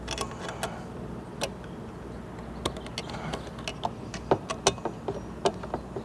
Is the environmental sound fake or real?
real